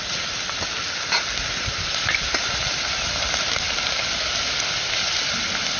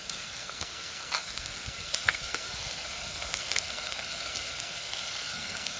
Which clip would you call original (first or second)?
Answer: first